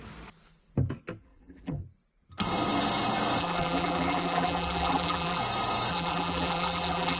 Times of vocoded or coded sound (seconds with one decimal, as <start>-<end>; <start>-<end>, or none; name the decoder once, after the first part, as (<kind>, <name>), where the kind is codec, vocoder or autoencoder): 1.2-1.8 (vocoder, BigVGAN v2); 3.4-5.4; 5.9-7.2